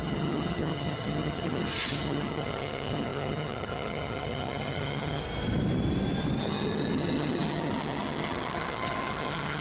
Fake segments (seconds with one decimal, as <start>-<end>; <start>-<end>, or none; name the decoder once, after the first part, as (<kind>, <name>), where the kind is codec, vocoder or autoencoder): 0.0-5.2 (vocoder, HiFi-GAN); 6.4-9.6